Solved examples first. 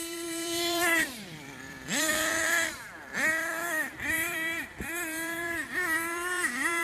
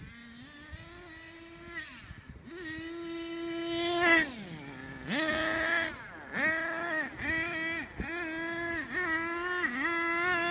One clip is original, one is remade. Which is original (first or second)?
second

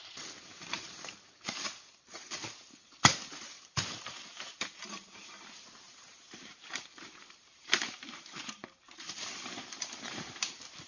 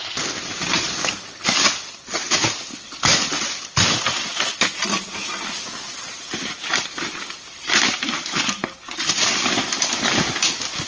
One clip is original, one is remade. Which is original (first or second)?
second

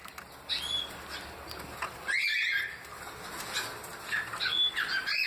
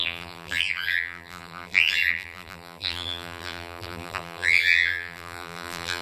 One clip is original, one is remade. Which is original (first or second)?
first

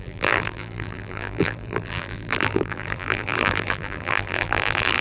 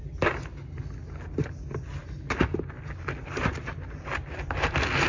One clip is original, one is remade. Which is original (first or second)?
second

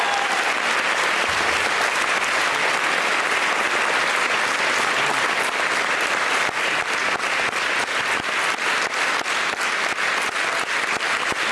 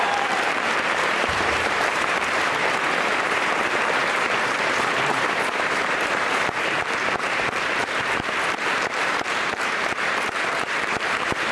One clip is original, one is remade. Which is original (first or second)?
first